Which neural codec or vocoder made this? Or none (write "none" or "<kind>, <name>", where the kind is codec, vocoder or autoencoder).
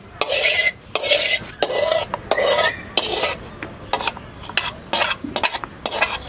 none